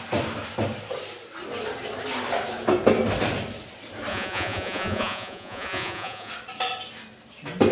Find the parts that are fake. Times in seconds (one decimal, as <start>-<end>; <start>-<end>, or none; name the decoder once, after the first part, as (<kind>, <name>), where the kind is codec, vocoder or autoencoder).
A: 4.1-6.3 (vocoder, Vocos)